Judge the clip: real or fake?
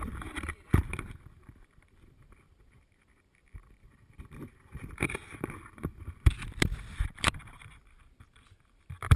fake